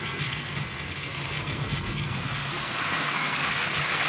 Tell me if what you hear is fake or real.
fake